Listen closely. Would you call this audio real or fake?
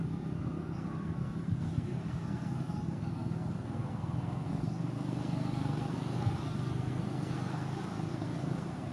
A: fake